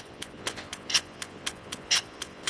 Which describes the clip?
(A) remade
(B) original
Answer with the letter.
A